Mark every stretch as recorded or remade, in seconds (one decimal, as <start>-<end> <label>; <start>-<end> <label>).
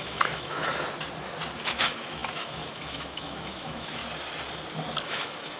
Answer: 0.0-0.7 remade; 0.7-1.7 recorded; 1.7-4.0 remade; 4.0-5.0 recorded; 5.0-5.6 remade